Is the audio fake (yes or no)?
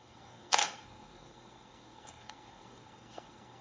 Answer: yes